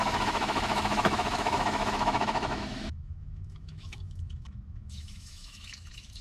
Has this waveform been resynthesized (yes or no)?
yes